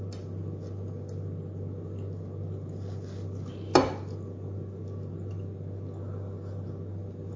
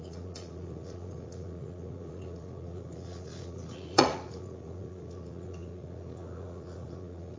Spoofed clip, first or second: second